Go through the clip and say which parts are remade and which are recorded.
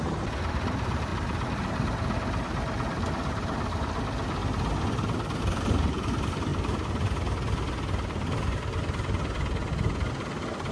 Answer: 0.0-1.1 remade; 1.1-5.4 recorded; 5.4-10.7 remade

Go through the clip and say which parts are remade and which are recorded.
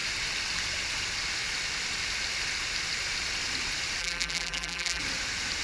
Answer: 0.0-4.0 recorded; 4.0-5.0 remade; 5.0-5.6 recorded